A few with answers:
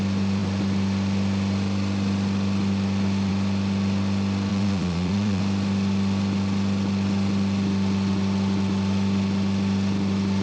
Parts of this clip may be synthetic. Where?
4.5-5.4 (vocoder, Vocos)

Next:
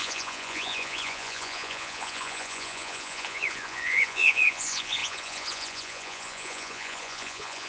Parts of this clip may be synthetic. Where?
0.0-7.7 (vocoder, Vocos)

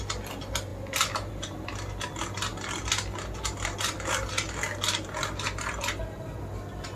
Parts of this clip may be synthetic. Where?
none